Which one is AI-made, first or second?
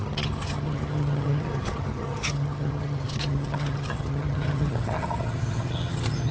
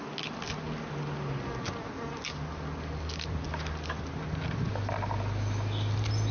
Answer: first